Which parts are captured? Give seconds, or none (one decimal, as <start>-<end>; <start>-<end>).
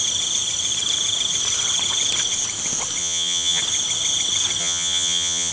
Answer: 0.0-3.0; 3.6-4.6